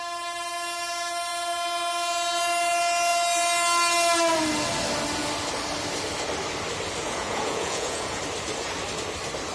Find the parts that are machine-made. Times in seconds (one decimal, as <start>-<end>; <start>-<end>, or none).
7.0-8.2